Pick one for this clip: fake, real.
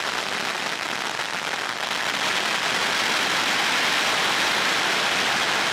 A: real